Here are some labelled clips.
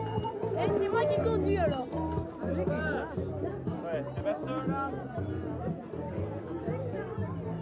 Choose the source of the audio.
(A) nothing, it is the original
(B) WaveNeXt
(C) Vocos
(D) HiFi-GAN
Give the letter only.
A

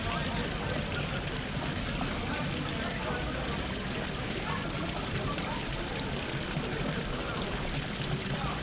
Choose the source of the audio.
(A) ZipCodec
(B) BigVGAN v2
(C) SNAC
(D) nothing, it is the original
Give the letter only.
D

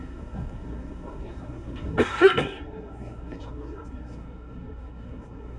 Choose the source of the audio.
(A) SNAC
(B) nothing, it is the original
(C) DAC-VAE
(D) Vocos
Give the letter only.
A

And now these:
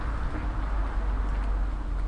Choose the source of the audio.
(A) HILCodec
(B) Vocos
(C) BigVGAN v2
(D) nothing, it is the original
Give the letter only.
D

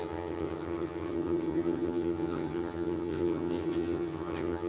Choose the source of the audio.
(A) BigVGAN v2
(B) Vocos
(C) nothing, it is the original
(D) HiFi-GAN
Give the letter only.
D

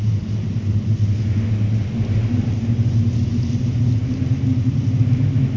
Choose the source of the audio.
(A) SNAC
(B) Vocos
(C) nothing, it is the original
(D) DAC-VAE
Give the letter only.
C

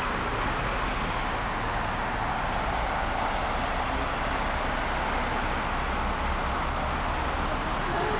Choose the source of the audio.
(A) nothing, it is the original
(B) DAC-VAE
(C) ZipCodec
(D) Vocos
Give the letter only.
A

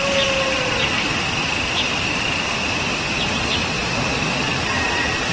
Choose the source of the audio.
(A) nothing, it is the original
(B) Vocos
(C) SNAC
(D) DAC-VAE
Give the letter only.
A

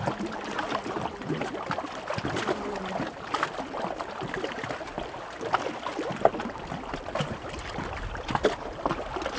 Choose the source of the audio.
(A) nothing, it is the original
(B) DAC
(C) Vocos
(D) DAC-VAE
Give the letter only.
A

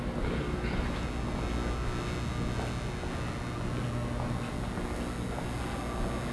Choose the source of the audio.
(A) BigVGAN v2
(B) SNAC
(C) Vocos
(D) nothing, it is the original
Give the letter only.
D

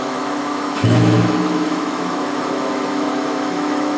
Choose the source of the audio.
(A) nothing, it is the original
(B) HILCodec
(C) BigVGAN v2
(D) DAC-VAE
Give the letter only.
D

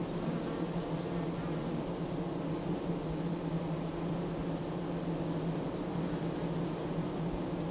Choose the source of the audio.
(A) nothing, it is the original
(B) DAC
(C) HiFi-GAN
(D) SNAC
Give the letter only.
A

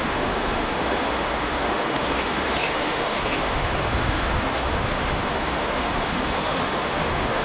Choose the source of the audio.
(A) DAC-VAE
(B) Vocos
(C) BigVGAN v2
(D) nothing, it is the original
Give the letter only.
A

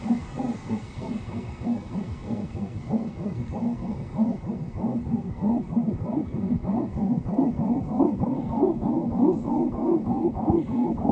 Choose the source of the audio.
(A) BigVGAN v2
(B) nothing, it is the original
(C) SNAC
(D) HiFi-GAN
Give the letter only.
C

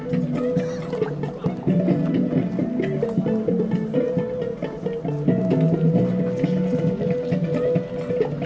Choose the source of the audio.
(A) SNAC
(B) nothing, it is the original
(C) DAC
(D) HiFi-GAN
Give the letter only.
B